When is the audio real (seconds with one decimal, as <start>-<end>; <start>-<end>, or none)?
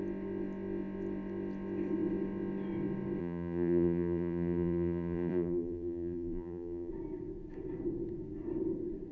0.0-3.2; 6.9-9.1